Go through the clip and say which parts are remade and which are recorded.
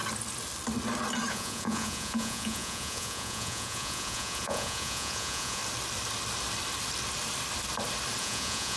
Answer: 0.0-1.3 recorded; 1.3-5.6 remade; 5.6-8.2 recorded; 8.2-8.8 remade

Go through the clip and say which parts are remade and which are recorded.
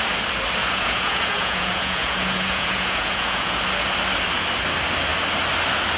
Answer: 0.0-0.6 recorded; 0.6-3.6 remade; 3.6-6.0 recorded